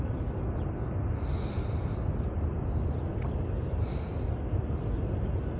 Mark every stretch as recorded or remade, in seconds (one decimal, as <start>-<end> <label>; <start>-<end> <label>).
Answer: 0.0-5.6 recorded